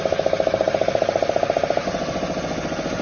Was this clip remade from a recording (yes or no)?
no